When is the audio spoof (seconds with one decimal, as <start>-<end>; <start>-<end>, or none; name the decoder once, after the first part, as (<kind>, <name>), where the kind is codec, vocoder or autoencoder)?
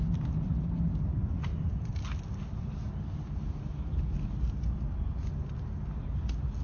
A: none